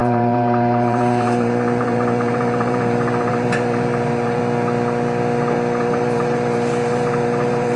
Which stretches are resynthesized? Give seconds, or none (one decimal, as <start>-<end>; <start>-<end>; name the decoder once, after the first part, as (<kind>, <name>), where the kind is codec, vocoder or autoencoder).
0.0-4.4 (vocoder, BigVGAN v2); 5.8-7.8